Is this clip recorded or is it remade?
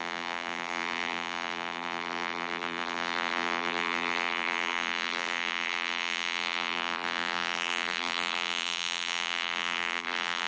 remade